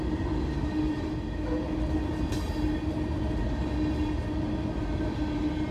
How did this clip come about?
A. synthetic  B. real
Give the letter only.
B